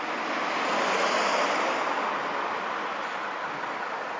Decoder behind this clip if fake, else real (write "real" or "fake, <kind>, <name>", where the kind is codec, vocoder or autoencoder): real